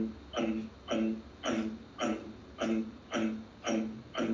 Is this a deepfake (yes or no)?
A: no